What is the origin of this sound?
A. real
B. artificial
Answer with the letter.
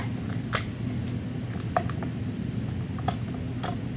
A